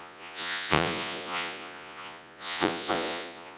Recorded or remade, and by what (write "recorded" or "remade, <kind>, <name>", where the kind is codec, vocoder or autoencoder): remade, vocoder, Vocos